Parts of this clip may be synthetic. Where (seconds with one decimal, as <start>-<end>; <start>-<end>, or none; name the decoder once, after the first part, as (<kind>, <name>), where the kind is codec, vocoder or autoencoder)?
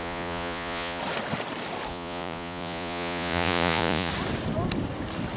0.0-1.0 (vocoder, Vocos); 1.9-4.1